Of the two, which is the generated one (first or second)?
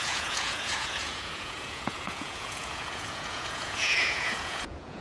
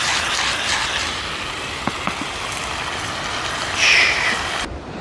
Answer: first